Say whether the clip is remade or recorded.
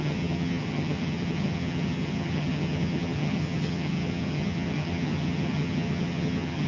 remade